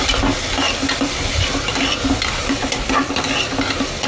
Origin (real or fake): real